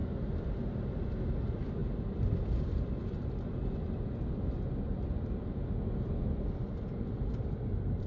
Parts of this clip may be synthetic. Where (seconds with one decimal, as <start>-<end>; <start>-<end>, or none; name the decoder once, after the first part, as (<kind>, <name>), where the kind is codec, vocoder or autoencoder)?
none